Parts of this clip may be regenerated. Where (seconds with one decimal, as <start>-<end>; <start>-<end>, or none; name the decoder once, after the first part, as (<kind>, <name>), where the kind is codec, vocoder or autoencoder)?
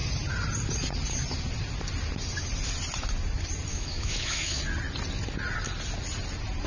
3.7-4.6 (autoencoder, DAC-VAE)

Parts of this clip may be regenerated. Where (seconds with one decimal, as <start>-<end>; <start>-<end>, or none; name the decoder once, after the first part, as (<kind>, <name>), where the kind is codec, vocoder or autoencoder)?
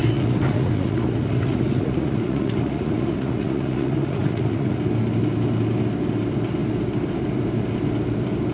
0.0-4.8 (vocoder, Vocos)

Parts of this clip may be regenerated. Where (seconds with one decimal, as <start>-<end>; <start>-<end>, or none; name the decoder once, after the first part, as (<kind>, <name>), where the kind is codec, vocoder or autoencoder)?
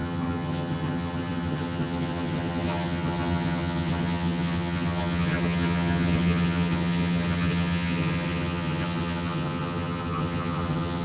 0.0-11.0 (vocoder, HiFi-GAN)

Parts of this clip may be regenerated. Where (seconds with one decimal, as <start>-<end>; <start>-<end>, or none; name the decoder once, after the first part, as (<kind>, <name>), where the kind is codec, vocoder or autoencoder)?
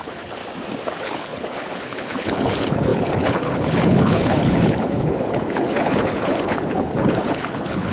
0.0-0.4 (codec, HILCodec); 1.0-7.9